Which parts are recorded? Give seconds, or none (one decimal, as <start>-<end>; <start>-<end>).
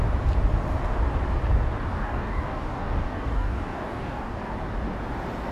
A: 0.0-1.9; 4.5-5.5